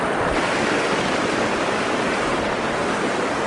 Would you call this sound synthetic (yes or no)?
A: no